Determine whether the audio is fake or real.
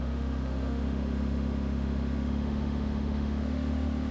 fake